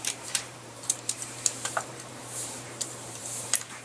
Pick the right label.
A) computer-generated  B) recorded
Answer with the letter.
A